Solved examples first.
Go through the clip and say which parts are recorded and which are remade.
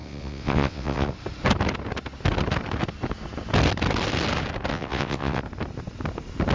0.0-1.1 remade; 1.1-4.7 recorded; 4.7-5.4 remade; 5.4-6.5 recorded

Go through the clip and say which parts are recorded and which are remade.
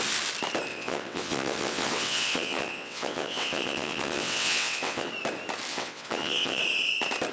0.0-0.7 recorded; 0.7-5.1 remade; 5.1-5.7 recorded; 5.7-6.6 remade; 6.6-7.3 recorded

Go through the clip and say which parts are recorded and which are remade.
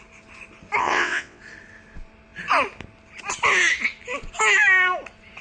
0.0-0.8 recorded; 0.8-1.4 remade; 1.4-5.4 recorded